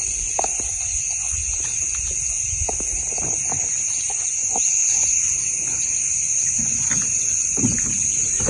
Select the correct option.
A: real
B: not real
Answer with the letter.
A